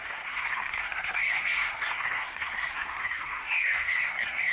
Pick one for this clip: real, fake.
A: fake